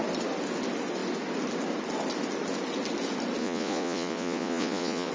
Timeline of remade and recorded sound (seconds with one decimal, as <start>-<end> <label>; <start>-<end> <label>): 0.0-3.4 recorded; 3.4-5.1 remade